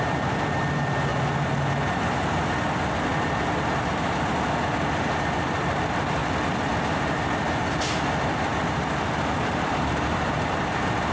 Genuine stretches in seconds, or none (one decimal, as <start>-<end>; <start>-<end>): 1.1-5.2; 6.2-6.7